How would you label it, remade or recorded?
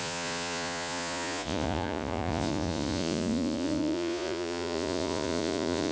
remade